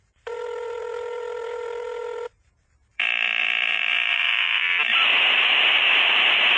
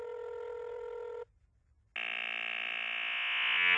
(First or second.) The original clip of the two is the second